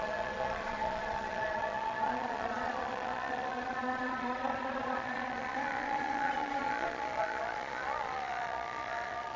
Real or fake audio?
fake